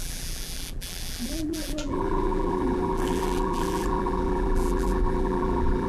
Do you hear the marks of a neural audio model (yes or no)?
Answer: yes